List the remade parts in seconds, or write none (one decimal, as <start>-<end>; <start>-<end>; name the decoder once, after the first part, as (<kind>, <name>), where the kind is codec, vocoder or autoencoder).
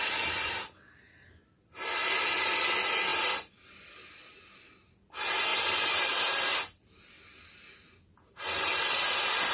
2.0-2.7 (vocoder, BigVGAN v2); 3.1-3.7; 5.5-6.5